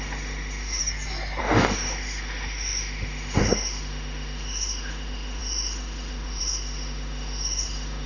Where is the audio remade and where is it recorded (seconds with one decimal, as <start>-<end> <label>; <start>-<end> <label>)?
0.0-0.8 remade; 0.8-1.4 recorded; 1.4-8.1 remade